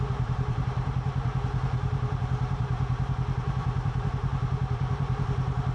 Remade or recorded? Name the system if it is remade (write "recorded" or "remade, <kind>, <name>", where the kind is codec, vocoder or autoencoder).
remade, vocoder, BigVGAN v2